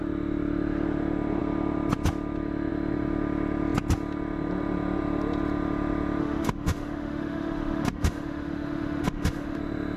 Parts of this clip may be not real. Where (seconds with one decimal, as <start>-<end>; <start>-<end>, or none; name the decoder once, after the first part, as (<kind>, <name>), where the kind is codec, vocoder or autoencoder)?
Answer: 6.2-9.6 (autoencoder, DAC-VAE)